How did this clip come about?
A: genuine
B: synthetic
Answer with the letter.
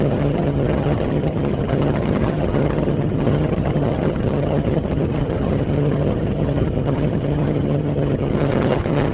B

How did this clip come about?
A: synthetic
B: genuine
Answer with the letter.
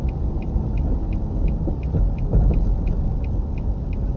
B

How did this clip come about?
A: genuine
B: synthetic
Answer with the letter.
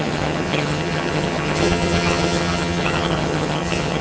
B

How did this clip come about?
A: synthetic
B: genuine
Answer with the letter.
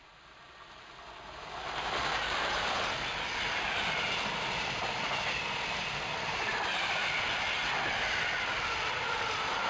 B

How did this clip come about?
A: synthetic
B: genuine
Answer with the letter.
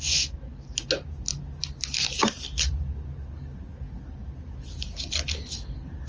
B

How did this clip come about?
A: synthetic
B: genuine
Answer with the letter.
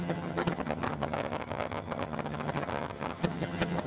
A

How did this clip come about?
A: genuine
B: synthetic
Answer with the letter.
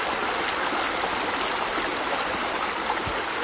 A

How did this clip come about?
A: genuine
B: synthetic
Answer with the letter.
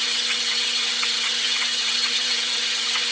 B